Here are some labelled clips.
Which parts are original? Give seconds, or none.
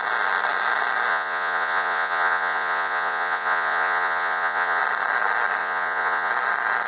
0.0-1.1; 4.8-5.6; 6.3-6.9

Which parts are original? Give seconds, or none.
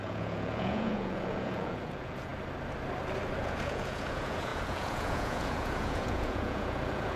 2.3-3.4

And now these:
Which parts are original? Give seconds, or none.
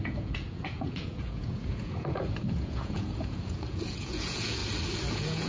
4.6-5.1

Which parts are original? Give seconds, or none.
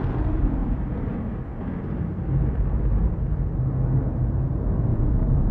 0.0-4.9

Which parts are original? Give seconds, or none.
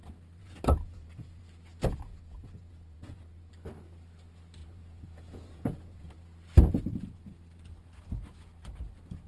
0.0-0.4; 1.4-2.1; 3.5-4.6; 6.1-9.3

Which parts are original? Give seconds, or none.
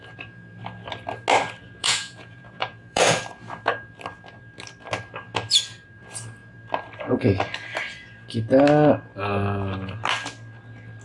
0.0-1.8; 3.2-11.0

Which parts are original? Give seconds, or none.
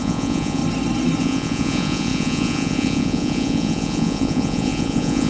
0.6-1.2